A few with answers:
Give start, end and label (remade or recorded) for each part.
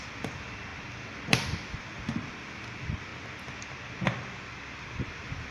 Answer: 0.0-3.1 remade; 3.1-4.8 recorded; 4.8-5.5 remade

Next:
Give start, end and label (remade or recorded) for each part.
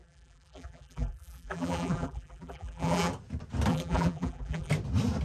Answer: 0.0-3.1 remade; 3.1-3.7 recorded; 3.7-4.7 remade; 4.7-5.2 recorded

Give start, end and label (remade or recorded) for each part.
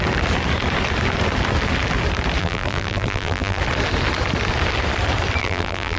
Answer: 0.0-2.4 recorded; 2.4-3.6 remade; 3.6-5.4 recorded; 5.4-6.0 remade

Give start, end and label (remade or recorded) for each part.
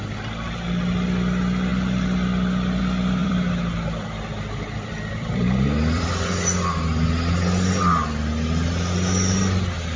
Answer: 0.0-3.2 recorded; 3.2-6.1 remade; 6.1-10.0 recorded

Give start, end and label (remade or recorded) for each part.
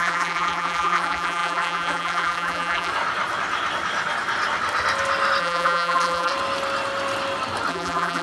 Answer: 0.0-2.9 remade; 2.9-5.4 recorded; 5.4-6.3 remade; 6.3-7.7 recorded; 7.7-8.2 remade